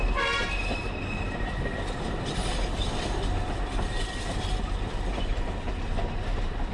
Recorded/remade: recorded